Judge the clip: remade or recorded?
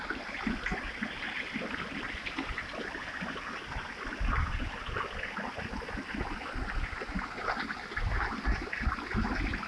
recorded